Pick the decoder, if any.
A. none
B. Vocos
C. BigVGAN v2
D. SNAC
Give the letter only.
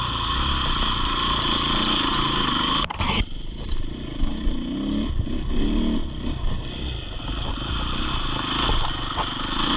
A